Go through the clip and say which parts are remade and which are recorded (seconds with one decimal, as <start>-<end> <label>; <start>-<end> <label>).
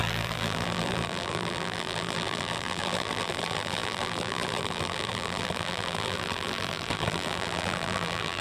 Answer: 0.0-8.4 remade